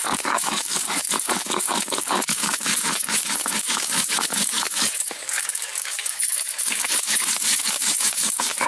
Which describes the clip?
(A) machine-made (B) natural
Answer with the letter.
A